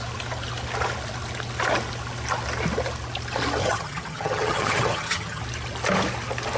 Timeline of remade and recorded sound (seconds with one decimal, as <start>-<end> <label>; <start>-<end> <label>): 0.0-3.6 recorded; 3.6-5.4 remade; 5.4-6.6 recorded